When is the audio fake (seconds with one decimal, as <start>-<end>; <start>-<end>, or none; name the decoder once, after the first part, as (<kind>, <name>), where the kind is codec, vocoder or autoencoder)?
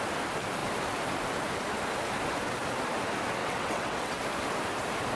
3.4-4.2 (vocoder, WaveNeXt)